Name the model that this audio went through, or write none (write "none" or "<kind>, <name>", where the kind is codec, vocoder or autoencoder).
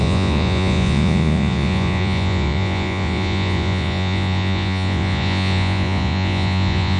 vocoder, Vocos